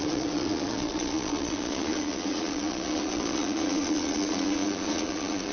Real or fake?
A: fake